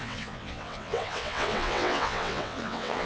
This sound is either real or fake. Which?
fake